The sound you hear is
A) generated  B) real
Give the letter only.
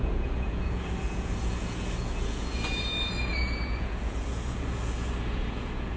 A